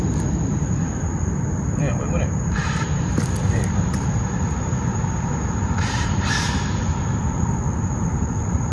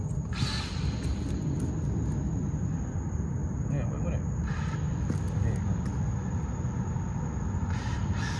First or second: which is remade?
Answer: first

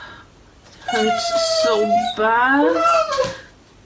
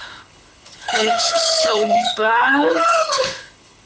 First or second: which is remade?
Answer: second